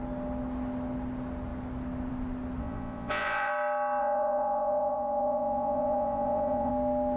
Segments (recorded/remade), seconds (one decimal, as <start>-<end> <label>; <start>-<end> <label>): 0.0-2.6 recorded; 2.6-3.5 remade; 3.5-4.0 recorded; 4.0-6.7 remade; 6.7-7.2 recorded